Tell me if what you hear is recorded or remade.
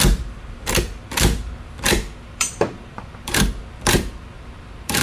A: remade